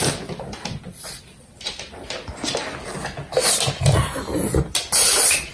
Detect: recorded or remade recorded